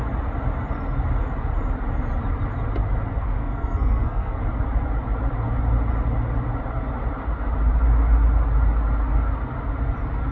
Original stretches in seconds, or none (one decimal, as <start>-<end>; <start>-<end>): 0.0-3.1; 4.4-10.3